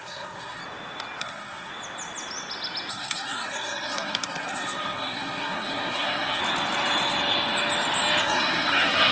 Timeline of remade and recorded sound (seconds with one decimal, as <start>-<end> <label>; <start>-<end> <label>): 0.0-0.6 remade; 0.6-1.2 recorded; 1.2-1.7 remade; 1.7-2.9 recorded; 2.9-6.4 remade; 6.4-8.2 recorded; 8.2-9.1 remade